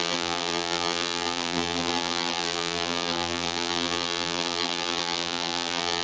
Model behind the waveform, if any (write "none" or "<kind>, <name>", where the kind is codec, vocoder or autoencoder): vocoder, BigVGAN v2